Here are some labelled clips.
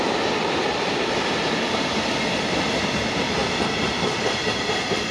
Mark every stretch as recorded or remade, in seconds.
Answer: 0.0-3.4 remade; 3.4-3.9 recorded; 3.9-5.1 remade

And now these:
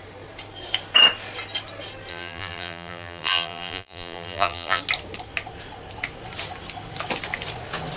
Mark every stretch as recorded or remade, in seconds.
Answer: 0.0-2.1 recorded; 2.1-4.8 remade; 4.8-8.0 recorded

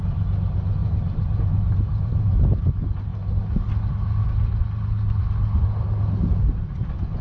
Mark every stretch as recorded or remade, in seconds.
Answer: 0.0-0.8 recorded; 0.8-2.4 remade; 2.4-7.2 recorded

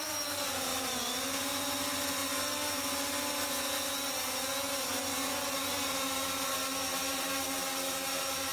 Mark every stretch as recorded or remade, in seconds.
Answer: 0.0-8.5 recorded

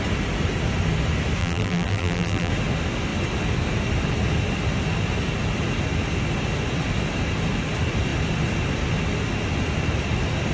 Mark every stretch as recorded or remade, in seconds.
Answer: 0.0-1.4 recorded; 1.4-2.5 remade; 2.5-10.5 recorded

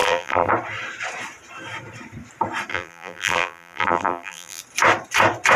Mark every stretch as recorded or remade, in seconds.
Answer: 0.0-0.5 remade; 0.5-2.7 recorded; 2.7-4.6 remade; 4.6-5.6 recorded

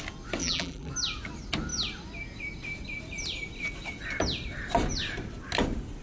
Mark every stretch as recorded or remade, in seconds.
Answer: 0.0-0.4 recorded; 0.4-0.9 remade; 0.9-6.0 recorded

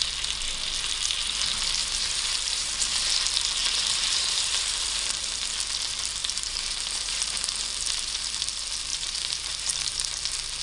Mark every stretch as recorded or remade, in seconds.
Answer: 0.0-1.8 recorded; 1.8-2.7 remade; 2.7-3.6 recorded; 3.6-5.5 remade; 5.5-6.2 recorded; 6.2-7.5 remade; 7.5-8.9 recorded; 8.9-10.1 remade; 10.1-10.6 recorded